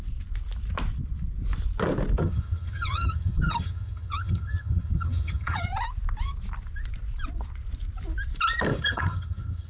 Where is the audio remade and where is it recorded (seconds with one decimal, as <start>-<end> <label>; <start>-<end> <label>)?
0.0-2.2 recorded; 2.2-5.7 remade; 5.7-8.7 recorded; 8.7-9.7 remade